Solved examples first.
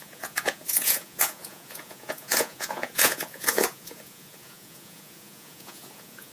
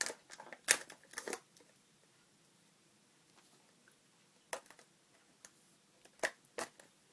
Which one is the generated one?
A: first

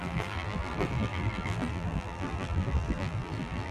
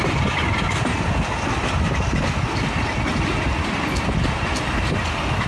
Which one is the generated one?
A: first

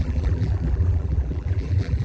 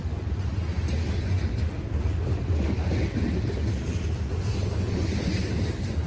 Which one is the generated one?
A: first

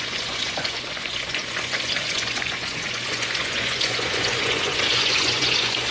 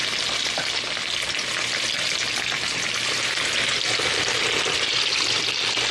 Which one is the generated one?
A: first